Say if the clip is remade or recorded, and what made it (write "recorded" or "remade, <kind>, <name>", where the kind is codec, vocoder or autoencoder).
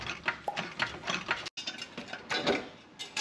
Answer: recorded